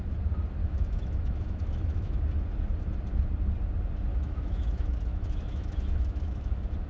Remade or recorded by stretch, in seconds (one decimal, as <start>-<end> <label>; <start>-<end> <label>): 0.0-0.6 recorded; 0.6-2.2 remade; 2.2-4.1 recorded; 4.1-6.5 remade; 6.5-6.9 recorded